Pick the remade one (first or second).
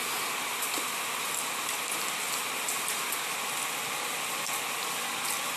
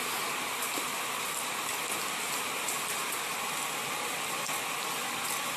second